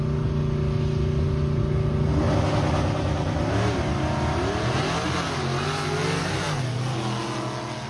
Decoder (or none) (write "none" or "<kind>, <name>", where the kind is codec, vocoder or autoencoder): none